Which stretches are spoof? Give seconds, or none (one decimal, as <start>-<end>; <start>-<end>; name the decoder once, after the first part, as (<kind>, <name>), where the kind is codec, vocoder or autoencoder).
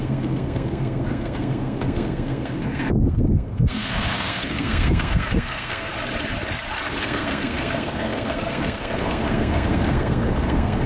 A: 0.0-5.9 (codec, SNAC); 7.0-10.9